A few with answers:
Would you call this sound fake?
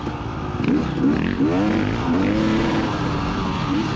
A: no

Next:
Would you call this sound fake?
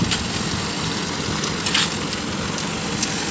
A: no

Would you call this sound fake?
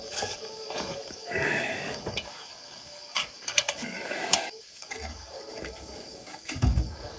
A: yes